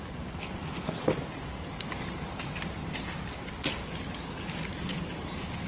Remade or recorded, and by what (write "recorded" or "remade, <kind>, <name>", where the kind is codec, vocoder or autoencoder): recorded